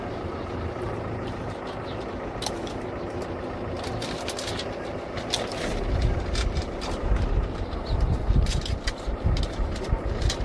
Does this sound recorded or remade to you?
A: recorded